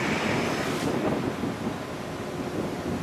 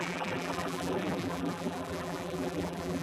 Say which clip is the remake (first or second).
second